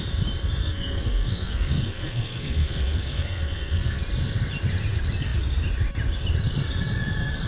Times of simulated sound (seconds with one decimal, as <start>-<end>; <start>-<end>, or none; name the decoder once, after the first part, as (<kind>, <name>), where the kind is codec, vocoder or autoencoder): 0.6-4.0 (codec, SNAC)